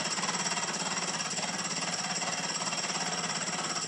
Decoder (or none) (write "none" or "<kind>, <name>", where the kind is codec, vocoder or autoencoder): none